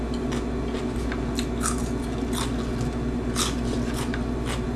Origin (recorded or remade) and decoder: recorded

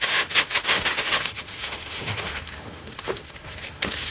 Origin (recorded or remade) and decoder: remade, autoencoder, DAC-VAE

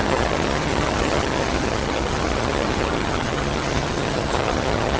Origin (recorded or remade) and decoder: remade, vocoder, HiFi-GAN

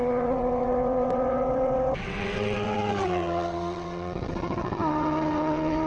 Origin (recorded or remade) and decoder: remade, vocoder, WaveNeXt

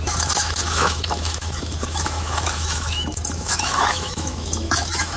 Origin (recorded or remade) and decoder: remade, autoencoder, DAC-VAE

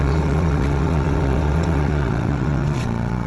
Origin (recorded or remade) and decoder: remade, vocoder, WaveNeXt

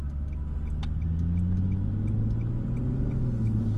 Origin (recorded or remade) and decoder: recorded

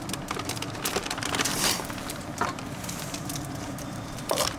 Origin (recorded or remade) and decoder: remade, vocoder, BigVGAN v2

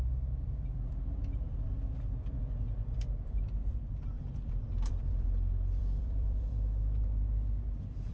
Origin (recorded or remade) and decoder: remade, vocoder, BigVGAN v2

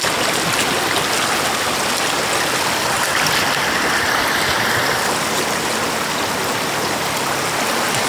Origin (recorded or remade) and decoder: recorded